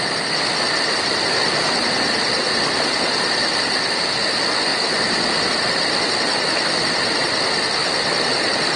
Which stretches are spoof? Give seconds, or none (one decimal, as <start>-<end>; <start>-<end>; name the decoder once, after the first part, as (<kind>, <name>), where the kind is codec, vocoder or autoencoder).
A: none